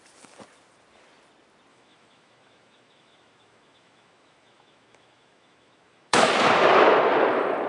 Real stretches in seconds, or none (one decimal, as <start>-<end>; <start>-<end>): 0.0-1.7; 6.3-7.7